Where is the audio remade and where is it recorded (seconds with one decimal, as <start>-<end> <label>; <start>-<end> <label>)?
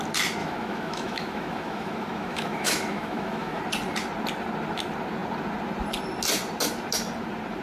0.0-0.4 recorded; 0.4-3.6 remade; 3.6-7.6 recorded